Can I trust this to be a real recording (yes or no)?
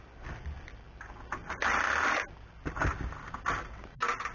yes